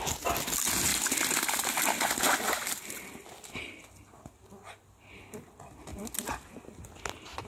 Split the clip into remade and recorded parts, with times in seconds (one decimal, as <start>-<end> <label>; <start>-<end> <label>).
0.0-7.5 recorded